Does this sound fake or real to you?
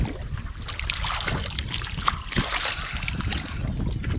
real